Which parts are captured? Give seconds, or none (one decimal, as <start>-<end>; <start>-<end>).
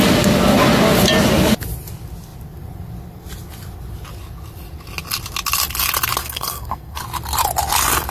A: 0.0-6.2; 7.0-8.1